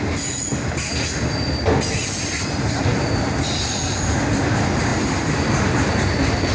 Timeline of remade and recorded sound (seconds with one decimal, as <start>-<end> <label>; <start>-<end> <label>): 0.0-6.5 recorded